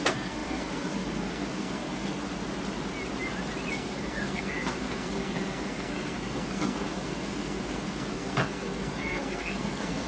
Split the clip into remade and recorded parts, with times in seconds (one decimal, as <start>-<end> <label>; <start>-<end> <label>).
0.0-2.2 remade; 2.2-3.7 recorded; 3.7-10.1 remade